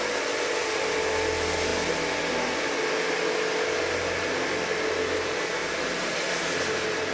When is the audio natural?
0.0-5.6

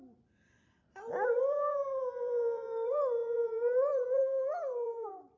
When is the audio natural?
none

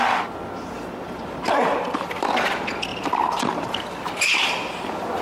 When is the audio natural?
0.0-1.4; 2.3-2.9; 4.1-5.2

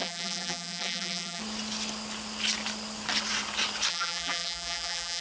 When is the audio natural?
1.4-3.9

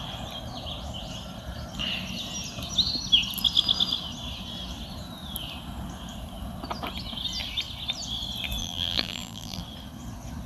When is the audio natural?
0.0-8.6; 9.6-10.5

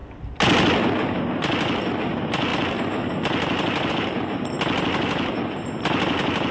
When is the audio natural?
0.0-6.5

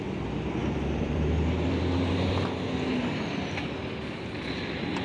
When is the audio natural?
0.0-0.6; 2.3-5.0